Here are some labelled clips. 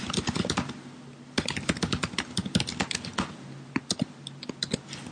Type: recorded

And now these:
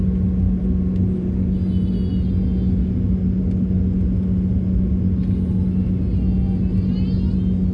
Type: recorded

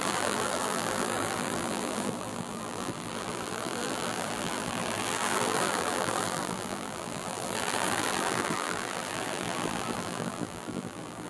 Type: remade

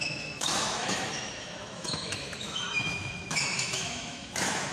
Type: remade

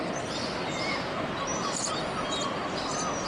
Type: recorded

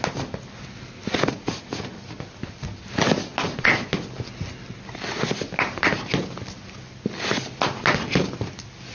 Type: recorded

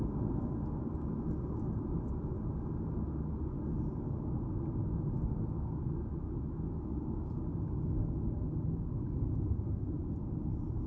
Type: recorded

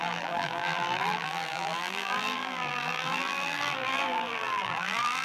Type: remade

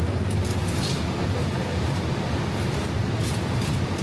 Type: recorded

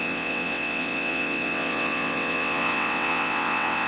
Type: remade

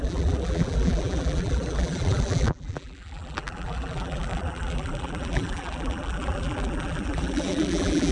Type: remade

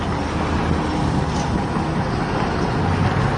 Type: recorded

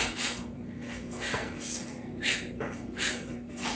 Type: remade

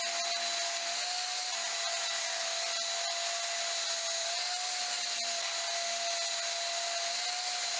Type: recorded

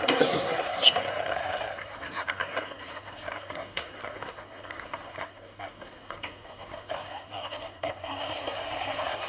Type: remade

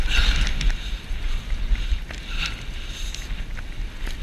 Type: recorded